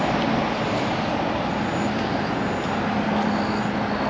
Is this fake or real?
real